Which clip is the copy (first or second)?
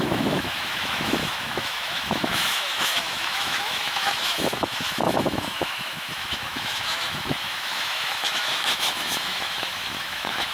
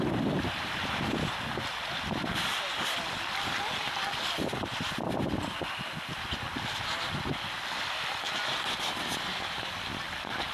first